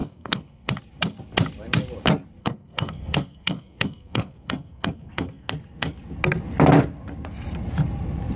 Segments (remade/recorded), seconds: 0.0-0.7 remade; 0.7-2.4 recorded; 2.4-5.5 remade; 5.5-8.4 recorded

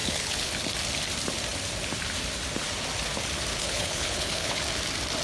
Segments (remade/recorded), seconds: 0.0-0.5 remade; 0.5-3.5 recorded; 3.5-4.6 remade; 4.6-5.2 recorded

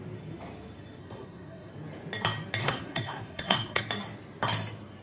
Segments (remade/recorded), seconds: 0.0-1.0 recorded; 1.0-1.7 remade; 1.7-2.6 recorded; 2.6-3.8 remade; 3.8-5.0 recorded